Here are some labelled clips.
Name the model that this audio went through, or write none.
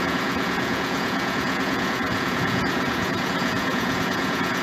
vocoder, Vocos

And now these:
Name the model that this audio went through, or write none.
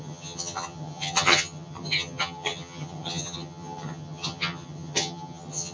vocoder, HiFi-GAN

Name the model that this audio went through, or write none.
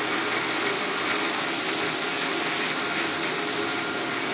none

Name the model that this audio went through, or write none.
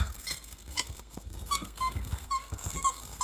codec, SNAC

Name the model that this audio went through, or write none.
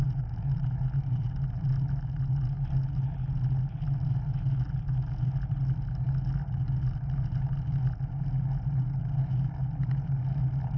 none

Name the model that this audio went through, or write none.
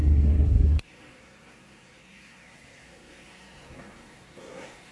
codec, SNAC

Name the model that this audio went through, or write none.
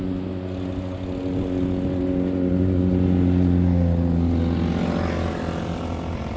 none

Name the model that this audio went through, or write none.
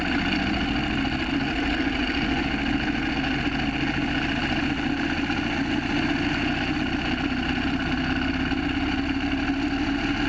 none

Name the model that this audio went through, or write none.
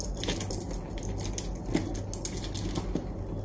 none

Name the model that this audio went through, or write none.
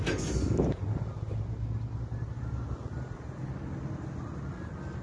none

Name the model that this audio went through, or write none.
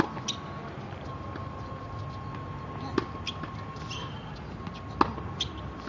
none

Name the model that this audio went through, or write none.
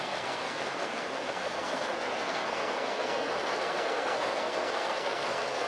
codec, SNAC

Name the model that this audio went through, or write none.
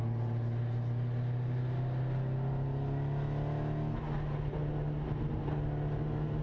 none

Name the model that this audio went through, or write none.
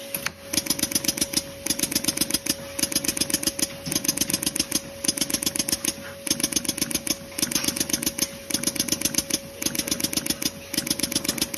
none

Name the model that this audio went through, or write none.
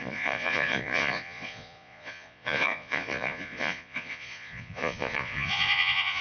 vocoder, Vocos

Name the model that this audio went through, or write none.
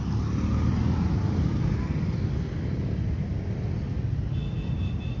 none